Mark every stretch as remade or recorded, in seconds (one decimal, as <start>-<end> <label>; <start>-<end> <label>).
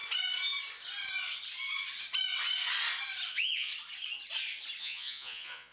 0.0-3.3 recorded; 3.3-3.7 remade; 3.7-4.8 recorded; 4.8-5.7 remade